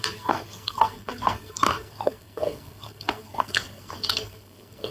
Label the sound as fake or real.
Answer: fake